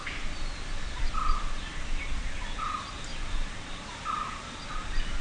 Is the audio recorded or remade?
recorded